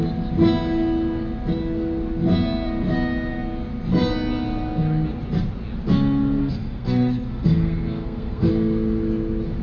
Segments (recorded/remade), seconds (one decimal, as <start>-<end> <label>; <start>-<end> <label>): 0.0-6.4 recorded; 6.4-8.5 remade; 8.5-9.6 recorded